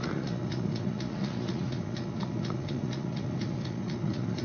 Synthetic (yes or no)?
yes